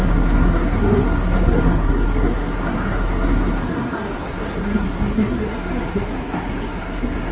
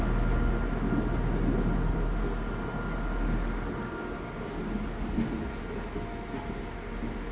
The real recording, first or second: second